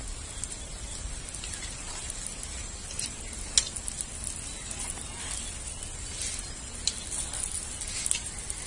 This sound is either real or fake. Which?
real